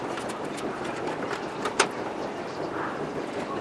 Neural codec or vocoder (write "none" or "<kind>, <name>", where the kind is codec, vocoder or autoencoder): none